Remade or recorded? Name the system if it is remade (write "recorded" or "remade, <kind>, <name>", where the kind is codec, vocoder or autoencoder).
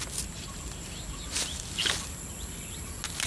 recorded